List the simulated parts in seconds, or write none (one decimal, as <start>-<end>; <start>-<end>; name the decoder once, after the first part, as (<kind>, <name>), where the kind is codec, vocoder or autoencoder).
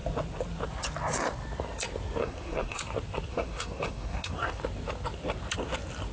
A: 2.2-2.8 (codec, SNAC); 3.3-4.6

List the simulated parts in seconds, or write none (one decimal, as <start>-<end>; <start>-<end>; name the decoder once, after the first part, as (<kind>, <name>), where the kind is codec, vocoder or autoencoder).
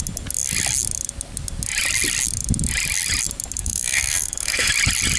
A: 3.6-4.7 (codec, SNAC)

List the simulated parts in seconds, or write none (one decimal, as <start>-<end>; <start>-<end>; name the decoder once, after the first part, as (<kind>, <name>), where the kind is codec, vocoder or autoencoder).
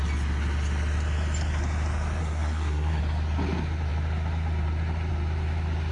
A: 2.2-3.0 (codec, SNAC)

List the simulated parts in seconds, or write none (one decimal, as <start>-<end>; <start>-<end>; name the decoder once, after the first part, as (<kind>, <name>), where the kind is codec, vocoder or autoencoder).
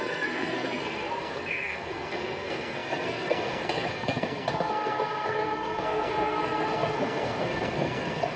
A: 0.0-8.4 (codec, SNAC)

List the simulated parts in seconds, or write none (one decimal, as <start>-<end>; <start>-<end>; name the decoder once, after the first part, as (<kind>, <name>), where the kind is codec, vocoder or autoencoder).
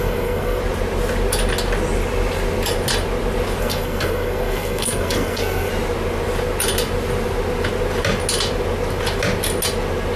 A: 0.0-0.6 (codec, SNAC); 3.6-5.7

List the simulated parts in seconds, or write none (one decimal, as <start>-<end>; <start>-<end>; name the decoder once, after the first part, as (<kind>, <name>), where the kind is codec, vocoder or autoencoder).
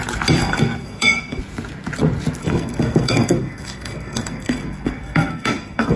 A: 0.4-1.4 (codec, SNAC); 2.4-6.0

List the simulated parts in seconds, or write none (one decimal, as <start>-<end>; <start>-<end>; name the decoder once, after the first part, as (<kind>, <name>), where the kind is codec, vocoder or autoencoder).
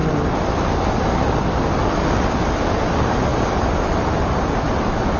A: none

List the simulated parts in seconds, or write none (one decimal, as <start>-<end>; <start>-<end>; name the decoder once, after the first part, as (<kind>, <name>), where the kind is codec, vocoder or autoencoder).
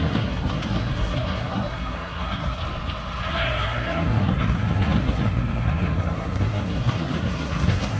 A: 0.0-2.6 (codec, SNAC); 3.3-8.0